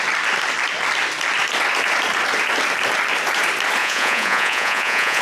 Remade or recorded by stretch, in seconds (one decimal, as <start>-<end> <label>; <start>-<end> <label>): 0.0-3.8 recorded; 3.8-5.2 remade

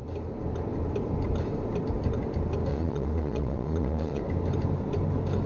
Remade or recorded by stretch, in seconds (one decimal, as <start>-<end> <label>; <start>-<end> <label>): 0.0-2.7 recorded; 2.7-4.2 remade; 4.2-5.5 recorded

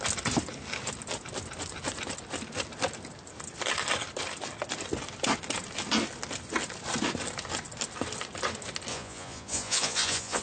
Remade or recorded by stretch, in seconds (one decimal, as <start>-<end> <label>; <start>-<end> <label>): 0.0-8.9 recorded; 8.9-10.4 remade

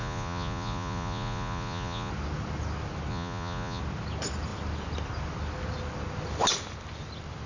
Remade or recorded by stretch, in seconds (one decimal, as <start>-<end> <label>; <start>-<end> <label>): 0.0-2.1 remade; 2.1-3.1 recorded; 3.1-3.8 remade; 3.8-7.5 recorded

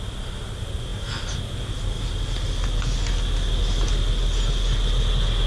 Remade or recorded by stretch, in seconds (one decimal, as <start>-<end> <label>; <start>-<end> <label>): 0.0-5.5 recorded

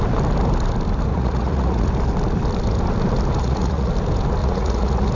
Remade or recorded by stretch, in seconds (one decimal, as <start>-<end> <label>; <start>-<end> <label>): 0.0-1.1 recorded; 1.1-1.9 remade; 1.9-3.4 recorded; 3.4-3.9 remade; 3.9-4.4 recorded; 4.4-5.1 remade

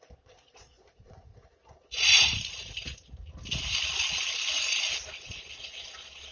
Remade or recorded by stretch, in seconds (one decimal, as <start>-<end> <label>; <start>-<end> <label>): 0.0-1.3 remade; 1.3-5.1 recorded; 5.1-6.3 remade

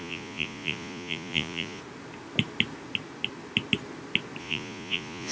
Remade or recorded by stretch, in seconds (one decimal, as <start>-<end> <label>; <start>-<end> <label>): 0.0-1.8 remade; 1.8-4.4 recorded; 4.4-5.3 remade